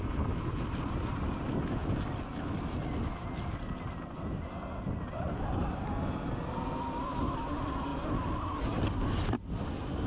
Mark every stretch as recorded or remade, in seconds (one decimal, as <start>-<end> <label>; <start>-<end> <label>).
0.0-10.1 recorded